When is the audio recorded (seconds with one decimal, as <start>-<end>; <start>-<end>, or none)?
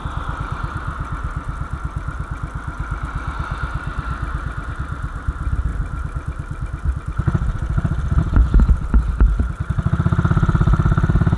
0.0-11.4